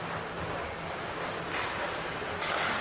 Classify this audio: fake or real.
real